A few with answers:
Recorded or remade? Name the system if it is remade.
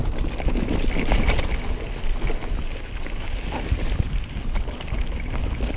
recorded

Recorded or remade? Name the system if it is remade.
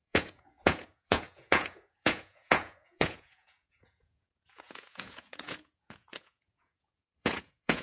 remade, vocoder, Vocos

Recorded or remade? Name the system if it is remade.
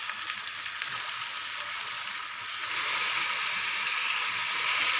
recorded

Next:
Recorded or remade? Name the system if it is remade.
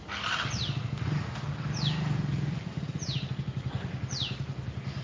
recorded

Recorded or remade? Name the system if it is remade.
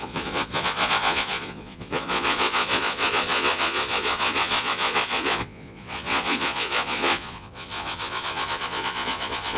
remade, vocoder, Vocos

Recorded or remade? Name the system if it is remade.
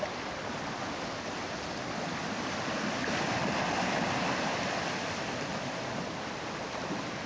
recorded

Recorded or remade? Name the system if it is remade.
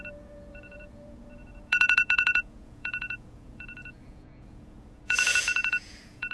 remade, vocoder, Vocos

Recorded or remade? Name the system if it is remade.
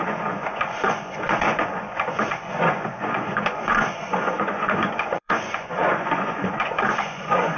remade, vocoder, Vocos